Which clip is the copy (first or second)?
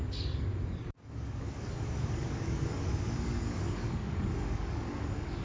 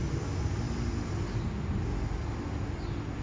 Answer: first